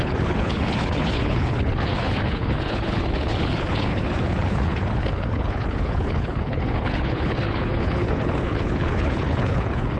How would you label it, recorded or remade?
remade